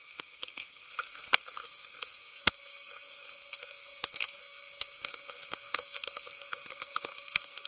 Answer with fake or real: fake